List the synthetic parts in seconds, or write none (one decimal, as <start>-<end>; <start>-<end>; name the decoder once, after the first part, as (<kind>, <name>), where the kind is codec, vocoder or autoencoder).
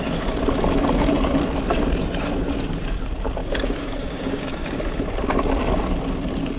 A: 3.4-4.8 (codec, DAC)